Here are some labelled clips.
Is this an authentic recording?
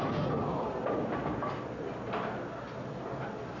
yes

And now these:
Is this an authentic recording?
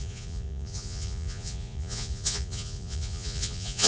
no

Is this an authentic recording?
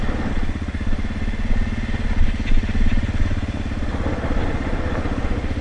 yes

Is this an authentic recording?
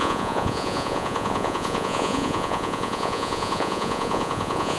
no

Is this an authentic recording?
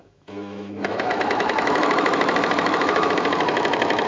no